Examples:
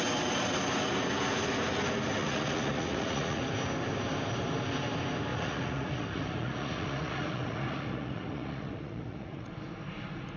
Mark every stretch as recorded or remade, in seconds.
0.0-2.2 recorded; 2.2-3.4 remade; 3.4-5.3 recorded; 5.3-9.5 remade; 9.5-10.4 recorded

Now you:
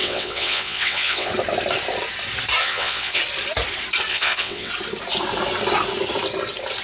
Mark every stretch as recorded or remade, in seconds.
0.0-1.3 remade; 1.3-2.6 recorded; 2.6-3.2 remade; 3.2-4.1 recorded; 4.1-4.7 remade; 4.7-6.8 recorded

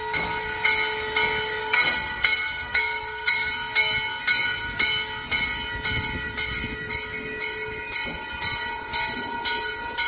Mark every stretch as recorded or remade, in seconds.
0.0-1.6 recorded; 1.6-3.5 remade; 3.5-10.1 recorded

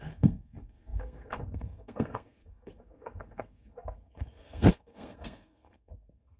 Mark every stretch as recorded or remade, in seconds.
0.0-6.4 remade

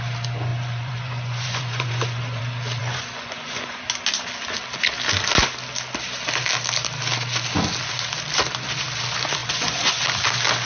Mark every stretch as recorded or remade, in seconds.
0.0-0.5 recorded; 0.5-2.4 remade; 2.4-2.8 recorded; 2.8-3.8 remade; 3.8-9.4 recorded; 9.4-10.0 remade; 10.0-10.7 recorded

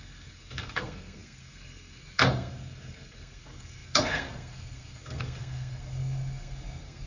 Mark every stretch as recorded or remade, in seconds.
0.0-7.1 remade

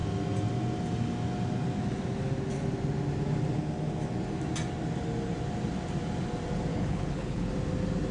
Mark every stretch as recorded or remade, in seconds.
0.0-6.7 recorded; 6.7-7.5 remade; 7.5-8.1 recorded

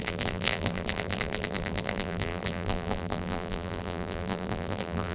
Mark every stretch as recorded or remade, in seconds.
0.0-5.1 remade